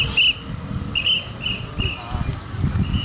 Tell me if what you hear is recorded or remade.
recorded